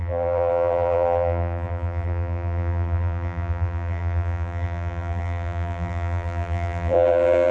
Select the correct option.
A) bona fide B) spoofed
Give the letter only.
B